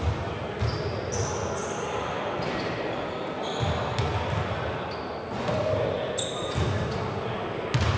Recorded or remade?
recorded